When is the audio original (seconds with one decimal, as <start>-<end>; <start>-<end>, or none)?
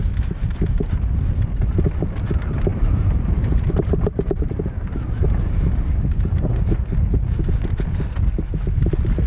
0.0-2.7; 6.5-9.3